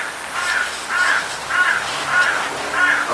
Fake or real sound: real